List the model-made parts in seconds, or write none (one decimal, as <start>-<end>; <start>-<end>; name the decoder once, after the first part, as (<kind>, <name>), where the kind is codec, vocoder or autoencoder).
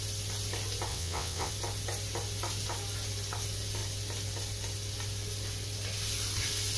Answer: 0.9-1.5 (vocoder, WaveNeXt)